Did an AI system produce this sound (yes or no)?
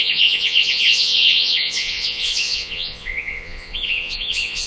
yes